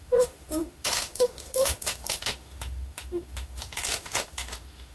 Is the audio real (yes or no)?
no